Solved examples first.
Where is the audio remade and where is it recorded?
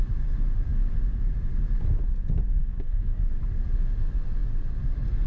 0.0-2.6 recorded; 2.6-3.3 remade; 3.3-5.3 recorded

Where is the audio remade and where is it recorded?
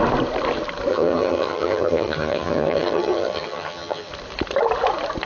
0.0-0.9 recorded; 0.9-4.1 remade; 4.1-5.3 recorded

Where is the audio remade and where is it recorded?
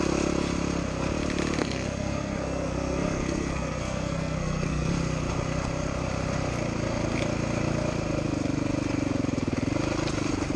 0.0-1.6 recorded; 1.6-4.9 remade; 4.9-10.6 recorded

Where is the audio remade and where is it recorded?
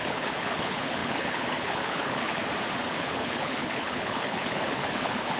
0.0-2.4 remade; 2.4-2.9 recorded; 2.9-5.4 remade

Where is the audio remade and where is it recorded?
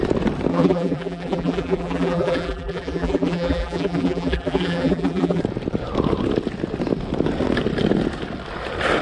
0.0-0.5 recorded; 0.5-5.4 remade; 5.4-9.0 recorded